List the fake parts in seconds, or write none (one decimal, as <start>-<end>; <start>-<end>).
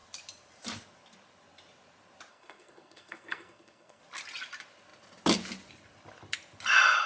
2.3-4.0